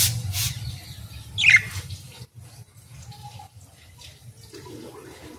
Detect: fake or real real